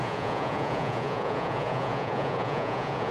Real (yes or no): no